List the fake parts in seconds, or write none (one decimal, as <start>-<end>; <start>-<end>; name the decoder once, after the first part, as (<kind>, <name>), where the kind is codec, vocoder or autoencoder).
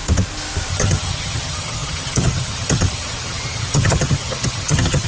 0.7-5.1 (vocoder, HiFi-GAN)